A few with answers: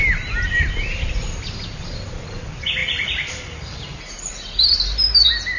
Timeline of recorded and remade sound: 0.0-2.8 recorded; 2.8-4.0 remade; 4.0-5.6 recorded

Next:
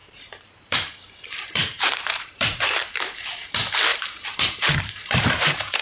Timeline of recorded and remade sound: 0.0-3.5 remade; 3.5-3.9 recorded; 3.9-5.8 remade